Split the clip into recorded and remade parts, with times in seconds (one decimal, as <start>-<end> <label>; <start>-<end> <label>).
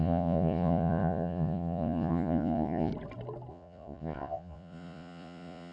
0.0-2.9 remade; 2.9-3.5 recorded; 3.5-5.7 remade